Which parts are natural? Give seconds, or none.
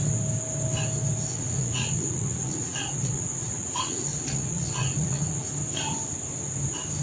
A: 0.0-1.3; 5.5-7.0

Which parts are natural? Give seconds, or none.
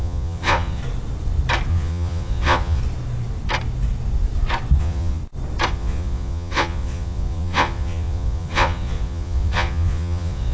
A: 0.8-1.7; 2.8-4.8; 5.2-5.7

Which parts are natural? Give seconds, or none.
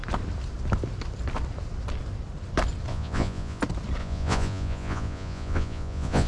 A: 0.0-2.9; 3.6-4.0